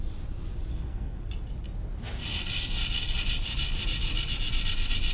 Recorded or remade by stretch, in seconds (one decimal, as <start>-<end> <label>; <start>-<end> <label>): 0.0-0.7 recorded; 0.7-1.3 remade; 1.3-5.1 recorded